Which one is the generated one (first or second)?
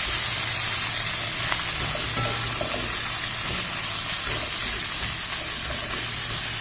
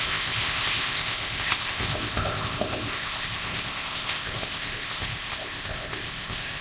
second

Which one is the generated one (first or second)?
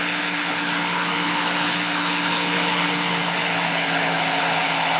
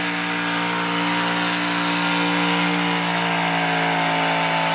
first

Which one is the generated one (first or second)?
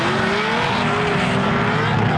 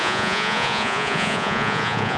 second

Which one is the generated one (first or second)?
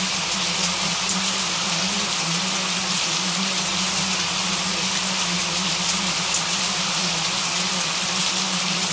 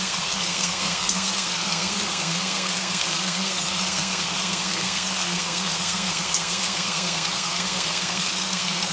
second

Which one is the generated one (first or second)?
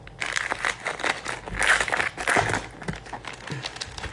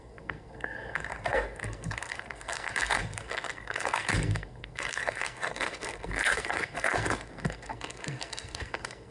second